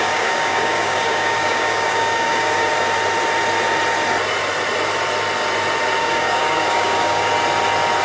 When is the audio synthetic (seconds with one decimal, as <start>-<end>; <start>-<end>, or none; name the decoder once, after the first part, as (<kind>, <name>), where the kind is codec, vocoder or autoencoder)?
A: 0.0-2.7 (codec, DAC); 6.0-7.3